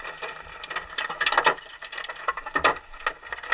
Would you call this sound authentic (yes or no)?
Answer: yes